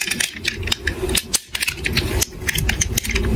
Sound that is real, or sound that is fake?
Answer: real